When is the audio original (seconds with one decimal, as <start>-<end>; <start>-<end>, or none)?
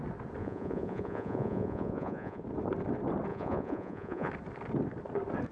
0.0-0.4; 2.4-3.3; 4.3-5.5